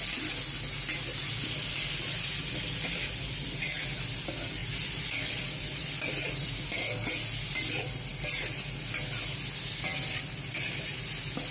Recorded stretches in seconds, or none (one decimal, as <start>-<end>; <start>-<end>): 0.0-4.6; 7.1-9.9; 10.9-11.5

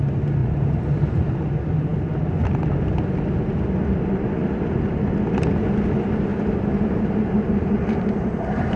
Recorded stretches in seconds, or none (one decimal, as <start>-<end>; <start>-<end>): 0.0-0.4; 1.2-6.3

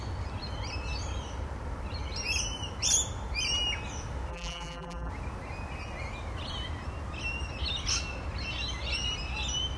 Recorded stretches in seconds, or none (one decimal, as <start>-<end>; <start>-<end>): 0.0-4.3; 5.1-9.8

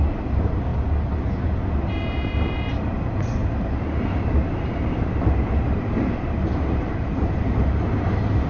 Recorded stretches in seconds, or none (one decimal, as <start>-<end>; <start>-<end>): 0.0-3.4; 7.3-8.5

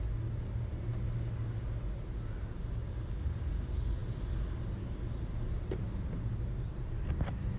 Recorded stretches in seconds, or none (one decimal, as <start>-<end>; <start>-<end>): 0.0-7.6

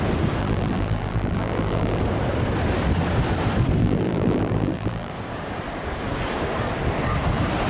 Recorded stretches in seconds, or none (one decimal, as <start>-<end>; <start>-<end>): 0.0-0.4; 2.0-3.8; 5.1-7.7

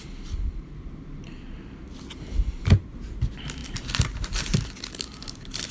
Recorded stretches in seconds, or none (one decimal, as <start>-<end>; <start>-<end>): 0.0-5.7

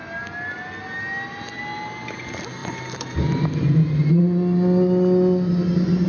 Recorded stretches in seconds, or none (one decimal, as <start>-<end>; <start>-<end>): 0.0-2.6; 4.2-6.1